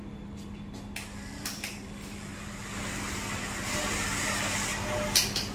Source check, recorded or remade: recorded